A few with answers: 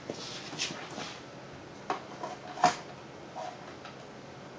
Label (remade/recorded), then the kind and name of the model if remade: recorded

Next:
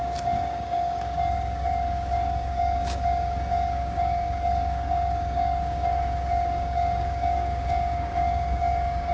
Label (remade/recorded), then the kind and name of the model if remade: remade, codec, DAC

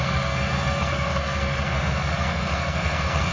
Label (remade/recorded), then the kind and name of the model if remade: remade, codec, SNAC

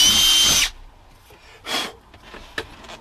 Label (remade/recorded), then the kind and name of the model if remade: recorded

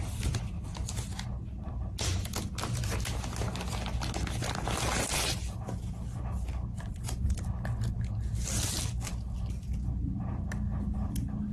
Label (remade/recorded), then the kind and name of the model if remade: recorded